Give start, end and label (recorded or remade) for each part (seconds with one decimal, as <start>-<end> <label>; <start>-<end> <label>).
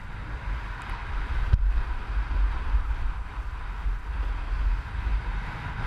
0.0-5.9 recorded